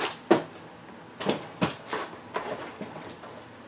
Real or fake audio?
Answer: real